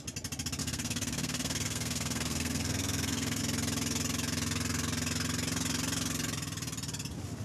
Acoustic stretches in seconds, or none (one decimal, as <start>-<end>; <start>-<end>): 0.0-0.6; 3.4-7.4